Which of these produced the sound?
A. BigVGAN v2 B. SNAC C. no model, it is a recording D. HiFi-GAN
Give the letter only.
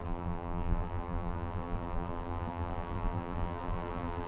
A